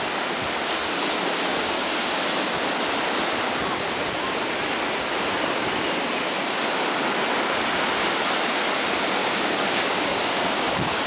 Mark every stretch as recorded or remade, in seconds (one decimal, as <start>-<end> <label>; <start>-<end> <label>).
0.0-1.5 recorded; 1.5-2.1 remade; 2.1-9.2 recorded; 9.2-11.1 remade